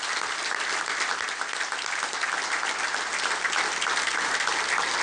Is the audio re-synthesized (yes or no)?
no